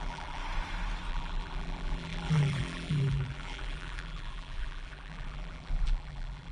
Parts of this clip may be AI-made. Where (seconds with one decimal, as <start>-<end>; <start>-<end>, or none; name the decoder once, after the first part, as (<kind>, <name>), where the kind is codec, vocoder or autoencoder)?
0.0-0.4 (vocoder, BigVGAN v2); 1.1-6.5